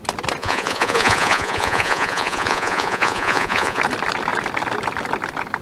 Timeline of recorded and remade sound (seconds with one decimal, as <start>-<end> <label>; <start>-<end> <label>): 0.0-0.4 recorded; 0.4-3.8 remade; 3.8-5.6 recorded